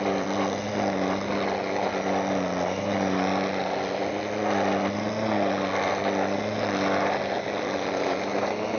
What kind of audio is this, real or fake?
real